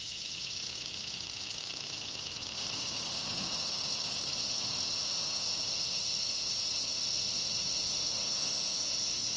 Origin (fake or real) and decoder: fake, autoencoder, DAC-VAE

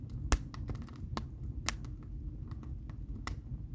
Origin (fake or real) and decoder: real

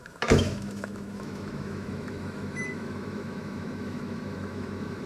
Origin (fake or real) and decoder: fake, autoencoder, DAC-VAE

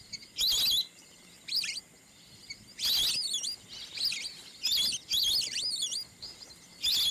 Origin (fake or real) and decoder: real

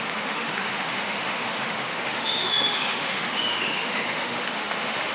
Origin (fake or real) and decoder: fake, autoencoder, DAC-VAE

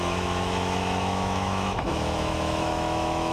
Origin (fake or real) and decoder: fake, autoencoder, DAC-VAE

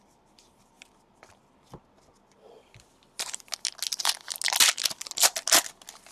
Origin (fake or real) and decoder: real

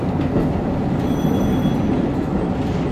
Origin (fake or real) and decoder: real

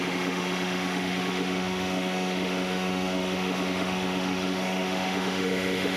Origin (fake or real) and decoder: fake, autoencoder, DAC-VAE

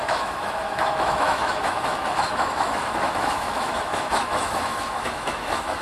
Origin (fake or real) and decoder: fake, autoencoder, DAC-VAE